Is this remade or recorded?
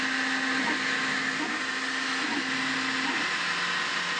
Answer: recorded